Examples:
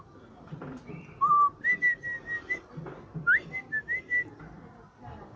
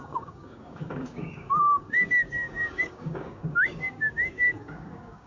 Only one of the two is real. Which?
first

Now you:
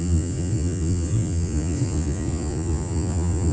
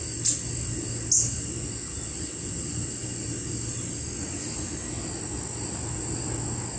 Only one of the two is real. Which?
second